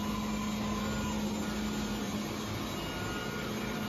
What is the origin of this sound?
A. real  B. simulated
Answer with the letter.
A